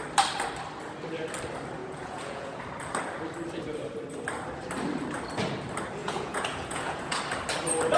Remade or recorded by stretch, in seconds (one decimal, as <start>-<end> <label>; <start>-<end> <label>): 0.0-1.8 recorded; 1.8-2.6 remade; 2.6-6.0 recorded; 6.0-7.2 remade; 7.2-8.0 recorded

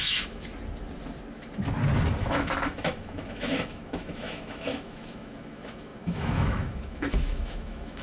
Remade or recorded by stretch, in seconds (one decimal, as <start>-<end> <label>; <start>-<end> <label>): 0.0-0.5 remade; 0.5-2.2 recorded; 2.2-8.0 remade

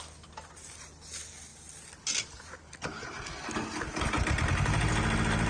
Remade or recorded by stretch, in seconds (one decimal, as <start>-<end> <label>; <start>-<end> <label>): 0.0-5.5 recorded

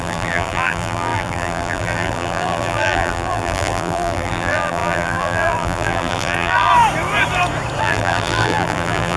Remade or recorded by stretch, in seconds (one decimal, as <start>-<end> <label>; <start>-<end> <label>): 0.0-6.7 remade; 6.7-7.8 recorded; 7.8-9.2 remade

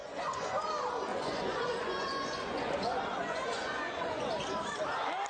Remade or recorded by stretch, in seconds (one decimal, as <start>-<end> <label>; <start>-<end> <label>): 0.0-0.7 remade; 0.7-1.1 recorded; 1.1-4.3 remade; 4.3-5.3 recorded

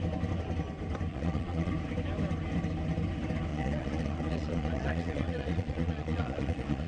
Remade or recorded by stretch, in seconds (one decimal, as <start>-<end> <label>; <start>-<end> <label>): 0.0-1.1 recorded; 1.1-1.7 remade; 1.7-3.5 recorded; 3.5-6.9 remade

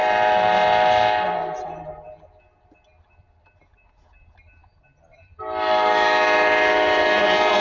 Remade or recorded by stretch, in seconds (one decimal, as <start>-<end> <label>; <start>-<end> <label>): 0.0-7.6 recorded